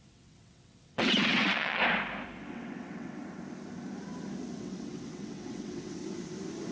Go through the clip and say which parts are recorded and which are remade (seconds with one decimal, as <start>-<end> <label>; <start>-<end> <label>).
0.0-1.8 remade; 1.8-2.5 recorded; 2.5-3.2 remade; 3.2-4.6 recorded; 4.6-6.0 remade; 6.0-6.7 recorded